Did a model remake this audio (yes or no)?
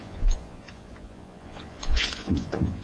yes